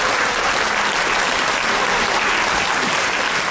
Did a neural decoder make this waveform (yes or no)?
no